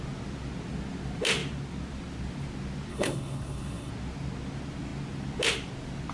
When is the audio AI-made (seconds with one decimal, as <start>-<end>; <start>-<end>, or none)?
2.9-3.9